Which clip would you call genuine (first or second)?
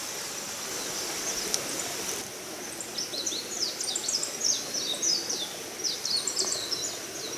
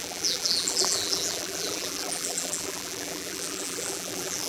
first